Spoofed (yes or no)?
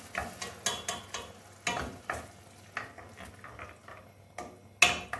no